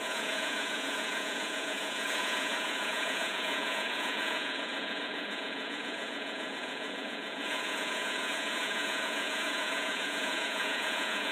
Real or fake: fake